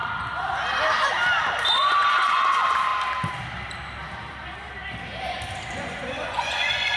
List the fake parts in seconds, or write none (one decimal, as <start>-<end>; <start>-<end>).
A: 1.7-2.9; 5.7-7.0

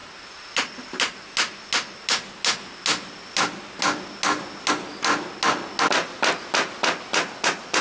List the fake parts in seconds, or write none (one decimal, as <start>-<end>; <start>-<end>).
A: none

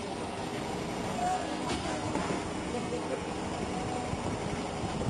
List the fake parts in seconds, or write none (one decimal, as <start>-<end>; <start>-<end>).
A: 0.0-0.6; 1.1-3.3

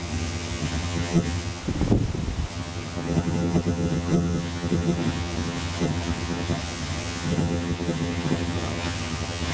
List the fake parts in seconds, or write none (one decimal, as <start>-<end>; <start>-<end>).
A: 0.0-1.6; 2.5-9.5